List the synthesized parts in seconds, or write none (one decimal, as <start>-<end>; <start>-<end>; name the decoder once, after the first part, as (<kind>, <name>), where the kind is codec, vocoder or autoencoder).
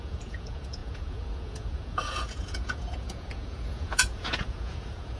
0.0-5.2 (vocoder, Vocos)